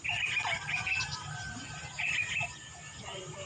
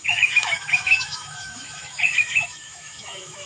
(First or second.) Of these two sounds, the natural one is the first